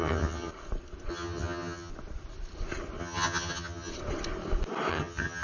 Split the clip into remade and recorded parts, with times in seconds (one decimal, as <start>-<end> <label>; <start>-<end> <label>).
0.0-0.5 remade; 0.5-1.1 recorded; 1.1-1.9 remade; 1.9-3.0 recorded; 3.0-3.9 remade; 3.9-4.9 recorded; 4.9-5.4 remade